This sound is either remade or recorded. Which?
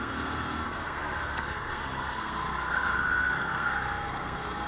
remade